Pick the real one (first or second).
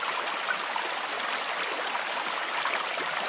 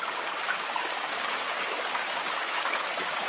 first